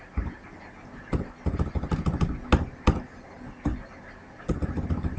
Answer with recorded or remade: recorded